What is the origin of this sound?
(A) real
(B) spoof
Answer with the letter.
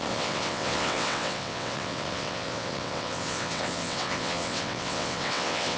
B